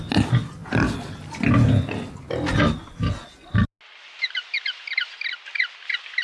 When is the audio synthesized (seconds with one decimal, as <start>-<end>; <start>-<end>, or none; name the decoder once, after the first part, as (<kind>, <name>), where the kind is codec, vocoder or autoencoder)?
none